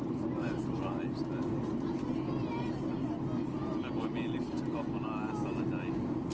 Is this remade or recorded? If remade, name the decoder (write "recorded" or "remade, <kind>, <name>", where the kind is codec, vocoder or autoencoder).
recorded